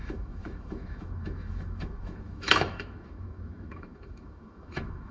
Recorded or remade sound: remade